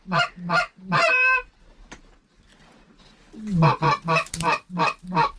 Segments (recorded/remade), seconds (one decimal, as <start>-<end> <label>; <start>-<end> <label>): 0.0-2.5 remade; 2.5-4.7 recorded; 4.7-5.4 remade